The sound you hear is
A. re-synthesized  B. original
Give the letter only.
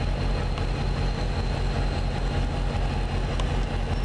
B